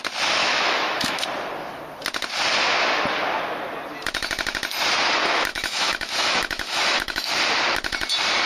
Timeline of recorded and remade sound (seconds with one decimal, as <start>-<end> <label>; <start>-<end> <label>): 0.0-0.4 recorded; 0.4-1.2 remade; 1.2-5.5 recorded; 5.5-7.3 remade; 7.3-8.5 recorded